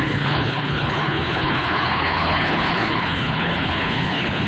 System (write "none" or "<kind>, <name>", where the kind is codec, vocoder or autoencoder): codec, HILCodec